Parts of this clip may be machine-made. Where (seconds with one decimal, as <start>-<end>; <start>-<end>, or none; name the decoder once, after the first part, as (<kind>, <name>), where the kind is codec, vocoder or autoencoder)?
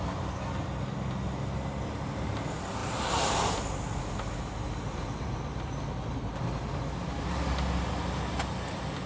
none